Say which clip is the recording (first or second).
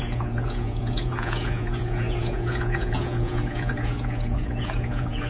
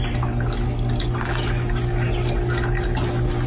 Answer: second